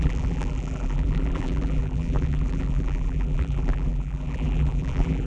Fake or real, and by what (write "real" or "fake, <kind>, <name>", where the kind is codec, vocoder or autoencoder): fake, vocoder, BigVGAN v2